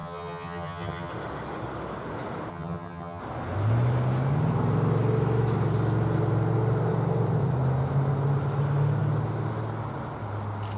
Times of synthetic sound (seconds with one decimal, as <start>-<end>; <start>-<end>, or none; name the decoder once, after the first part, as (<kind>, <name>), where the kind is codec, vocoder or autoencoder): 0.0-1.1 (vocoder, HiFi-GAN); 2.5-3.2